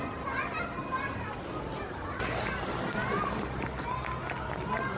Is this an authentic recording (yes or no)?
yes